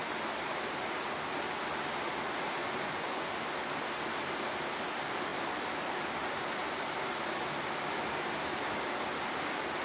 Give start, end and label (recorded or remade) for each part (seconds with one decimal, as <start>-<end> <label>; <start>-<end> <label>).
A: 0.0-2.6 recorded; 2.6-3.3 remade; 3.3-9.8 recorded